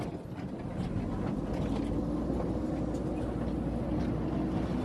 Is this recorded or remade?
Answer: recorded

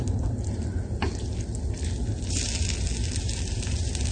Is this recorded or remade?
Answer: recorded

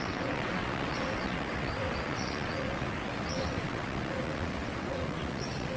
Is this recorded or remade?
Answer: remade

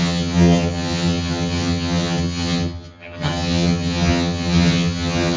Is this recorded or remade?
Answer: remade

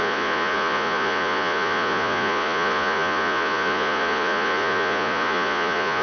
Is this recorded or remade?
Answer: remade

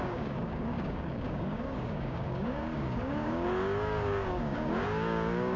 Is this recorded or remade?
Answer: remade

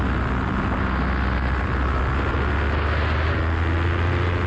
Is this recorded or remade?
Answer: recorded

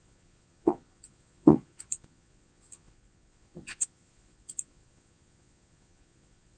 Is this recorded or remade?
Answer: remade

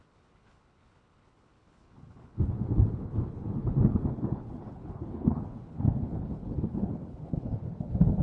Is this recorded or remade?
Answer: remade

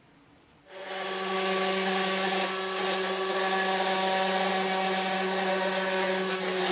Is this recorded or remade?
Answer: recorded